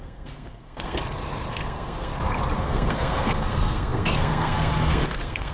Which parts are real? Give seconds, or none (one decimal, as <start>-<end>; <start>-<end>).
1.0-1.5; 2.1-2.6